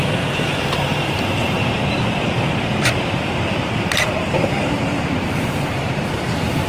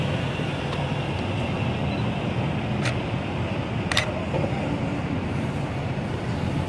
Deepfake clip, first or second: first